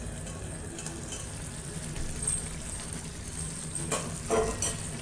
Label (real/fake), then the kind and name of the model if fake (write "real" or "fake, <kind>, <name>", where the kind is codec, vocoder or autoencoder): real